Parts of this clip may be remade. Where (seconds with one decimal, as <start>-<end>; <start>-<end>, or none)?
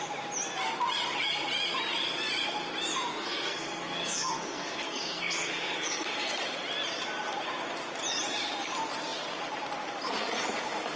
3.1-6.3